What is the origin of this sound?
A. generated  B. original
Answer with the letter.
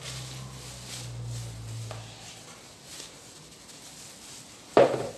B